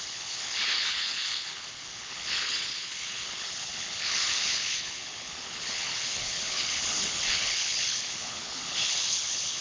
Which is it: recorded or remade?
remade